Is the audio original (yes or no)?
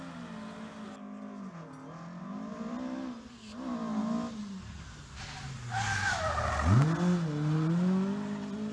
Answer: yes